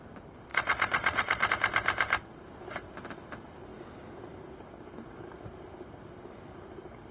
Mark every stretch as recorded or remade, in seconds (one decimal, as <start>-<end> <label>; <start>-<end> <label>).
0.0-0.5 recorded; 0.5-1.5 remade; 1.5-7.1 recorded